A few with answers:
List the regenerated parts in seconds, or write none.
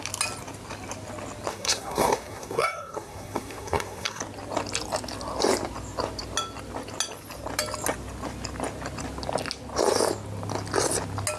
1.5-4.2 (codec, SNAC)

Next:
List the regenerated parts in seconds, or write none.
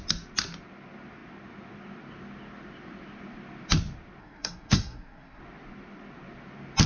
4.2-5.4 (codec, SNAC)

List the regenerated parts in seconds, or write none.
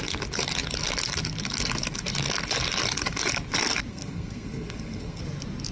3.9-5.2 (codec, SNAC)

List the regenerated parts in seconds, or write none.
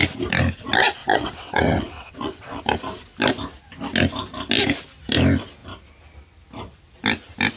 1.0-2.6 (vocoder, WaveNeXt)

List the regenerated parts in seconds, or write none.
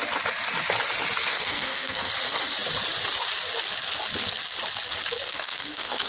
1.3-2.1 (codec, SNAC); 5.3-6.1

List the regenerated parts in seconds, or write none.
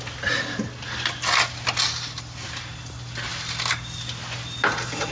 none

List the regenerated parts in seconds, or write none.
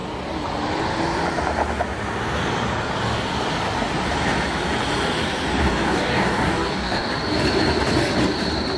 5.6-7.1 (codec, DAC)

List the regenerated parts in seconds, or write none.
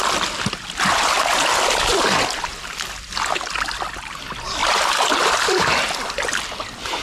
2.5-3.5 (vocoder, BigVGAN v2); 4.6-5.7